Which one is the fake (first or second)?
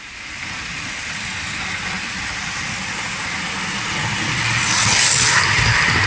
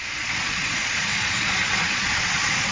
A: second